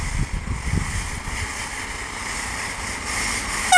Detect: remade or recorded recorded